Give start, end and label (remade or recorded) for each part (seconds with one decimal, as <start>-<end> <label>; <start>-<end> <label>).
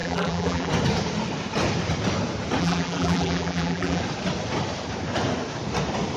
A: 0.0-0.7 remade; 0.7-2.6 recorded; 2.6-4.0 remade; 4.0-6.2 recorded